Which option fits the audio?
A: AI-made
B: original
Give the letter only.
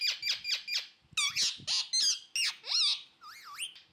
B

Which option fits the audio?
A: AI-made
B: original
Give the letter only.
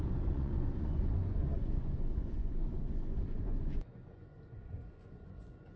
A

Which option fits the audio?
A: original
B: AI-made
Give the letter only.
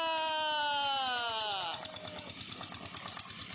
A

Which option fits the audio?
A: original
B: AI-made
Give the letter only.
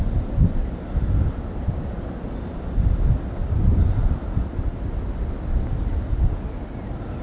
A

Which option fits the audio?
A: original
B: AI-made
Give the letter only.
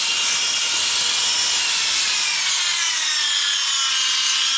A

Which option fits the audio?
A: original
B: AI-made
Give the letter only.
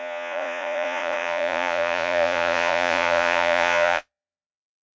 B